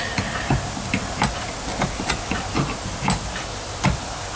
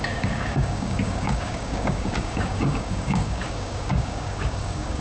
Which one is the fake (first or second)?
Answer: second